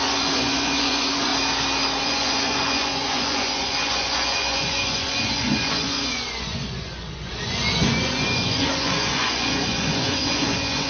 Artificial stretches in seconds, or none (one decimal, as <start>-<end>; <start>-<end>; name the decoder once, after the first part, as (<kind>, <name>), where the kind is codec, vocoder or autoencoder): 0.0-1.3 (vocoder, Vocos); 2.0-10.9